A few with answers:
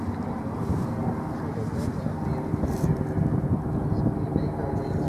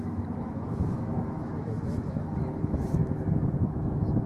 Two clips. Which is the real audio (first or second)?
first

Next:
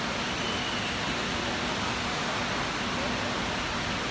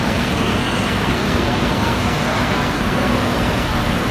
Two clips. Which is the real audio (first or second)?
first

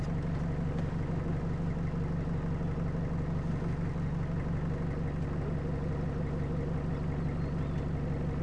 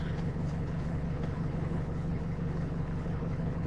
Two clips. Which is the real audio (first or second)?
first